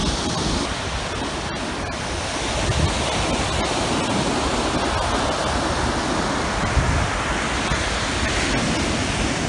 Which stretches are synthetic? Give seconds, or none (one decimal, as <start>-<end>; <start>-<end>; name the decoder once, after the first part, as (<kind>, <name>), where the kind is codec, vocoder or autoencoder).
none